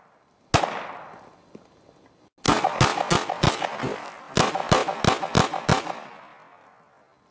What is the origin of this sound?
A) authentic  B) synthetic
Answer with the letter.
A